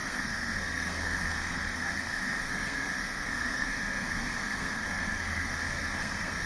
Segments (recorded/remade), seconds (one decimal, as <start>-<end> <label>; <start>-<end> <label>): 0.0-6.5 remade